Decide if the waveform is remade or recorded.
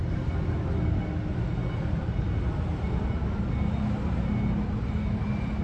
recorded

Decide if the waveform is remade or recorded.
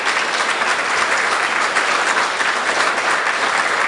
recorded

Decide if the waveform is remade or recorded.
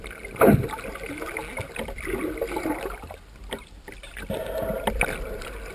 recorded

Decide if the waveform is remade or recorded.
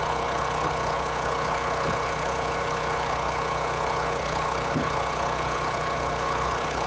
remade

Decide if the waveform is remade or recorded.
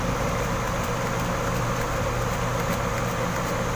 recorded